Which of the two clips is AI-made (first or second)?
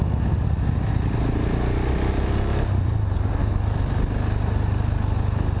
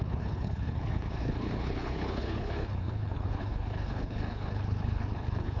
second